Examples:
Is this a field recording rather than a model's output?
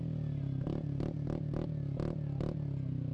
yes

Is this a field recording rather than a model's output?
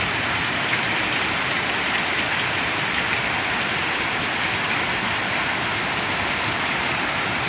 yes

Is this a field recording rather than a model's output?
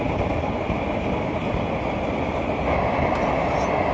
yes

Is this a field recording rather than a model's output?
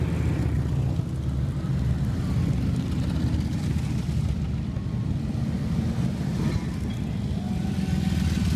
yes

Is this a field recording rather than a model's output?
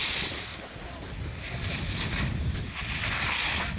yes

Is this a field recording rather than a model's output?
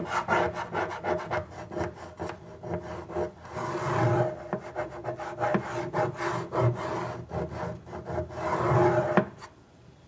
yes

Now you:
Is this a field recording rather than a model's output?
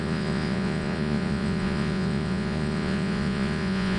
no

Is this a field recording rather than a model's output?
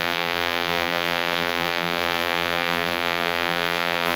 no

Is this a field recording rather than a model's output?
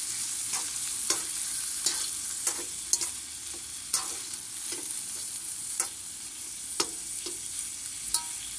yes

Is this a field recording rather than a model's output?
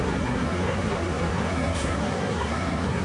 no